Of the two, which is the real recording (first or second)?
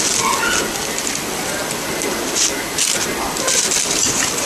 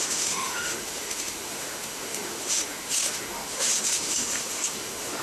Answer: first